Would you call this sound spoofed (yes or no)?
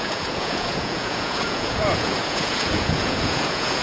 yes